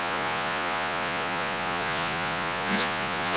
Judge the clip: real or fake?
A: fake